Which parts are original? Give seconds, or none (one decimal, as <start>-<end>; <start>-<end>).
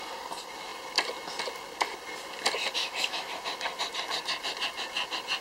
0.0-2.8; 3.3-5.4